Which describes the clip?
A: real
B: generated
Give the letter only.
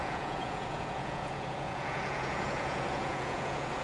B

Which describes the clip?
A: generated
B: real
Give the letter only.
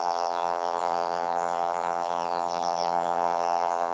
A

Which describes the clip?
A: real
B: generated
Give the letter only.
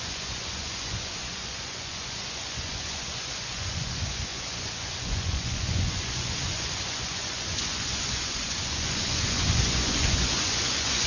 B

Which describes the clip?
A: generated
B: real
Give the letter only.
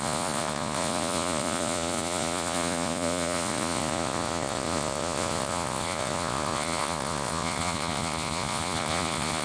A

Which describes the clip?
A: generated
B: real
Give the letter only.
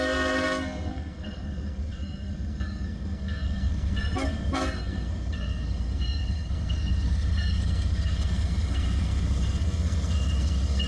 A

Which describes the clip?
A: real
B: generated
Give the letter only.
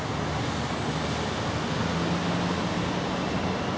A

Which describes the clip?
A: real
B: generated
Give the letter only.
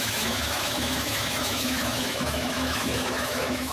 B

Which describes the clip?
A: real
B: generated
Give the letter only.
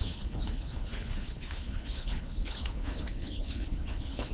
B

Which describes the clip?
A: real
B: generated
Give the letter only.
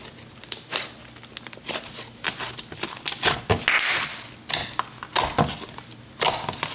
A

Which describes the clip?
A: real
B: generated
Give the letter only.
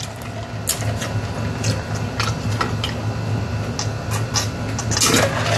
A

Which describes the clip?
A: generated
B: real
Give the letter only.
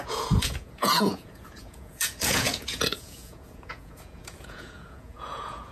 A